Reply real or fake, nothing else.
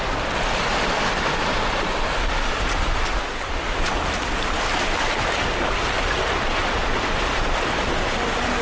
real